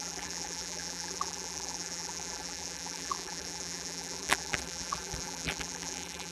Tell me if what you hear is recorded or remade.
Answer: remade